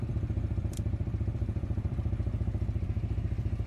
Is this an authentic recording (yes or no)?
no